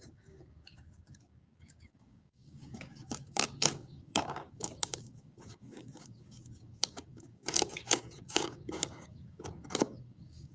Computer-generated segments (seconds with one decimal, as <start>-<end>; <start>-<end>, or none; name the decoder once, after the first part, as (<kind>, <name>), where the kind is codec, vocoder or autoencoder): 0.0-10.5 (codec, DAC)